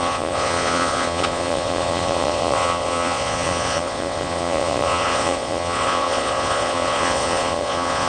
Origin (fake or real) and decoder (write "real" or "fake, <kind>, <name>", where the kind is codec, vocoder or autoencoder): fake, vocoder, Vocos